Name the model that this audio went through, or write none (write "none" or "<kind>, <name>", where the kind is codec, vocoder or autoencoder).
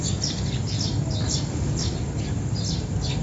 none